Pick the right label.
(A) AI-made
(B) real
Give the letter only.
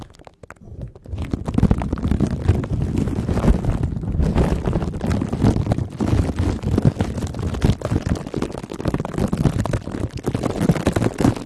B